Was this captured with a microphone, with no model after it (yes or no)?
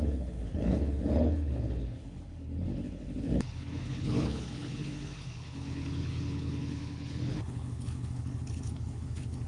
no